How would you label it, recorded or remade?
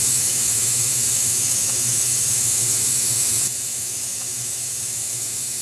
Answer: remade